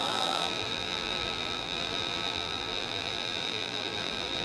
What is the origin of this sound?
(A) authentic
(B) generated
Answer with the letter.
B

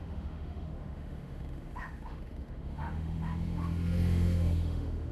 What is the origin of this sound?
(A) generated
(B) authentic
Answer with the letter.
A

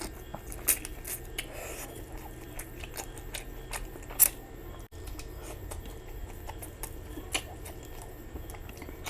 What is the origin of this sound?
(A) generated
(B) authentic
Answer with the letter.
B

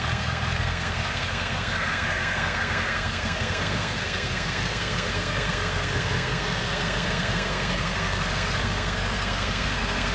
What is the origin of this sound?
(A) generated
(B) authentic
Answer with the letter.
A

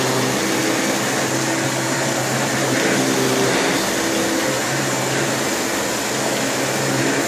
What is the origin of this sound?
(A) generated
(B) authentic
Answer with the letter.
B